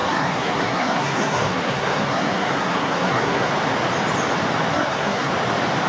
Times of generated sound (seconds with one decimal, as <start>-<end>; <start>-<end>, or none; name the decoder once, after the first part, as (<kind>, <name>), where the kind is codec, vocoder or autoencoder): 0.0-3.5 (codec, SNAC); 4.7-5.3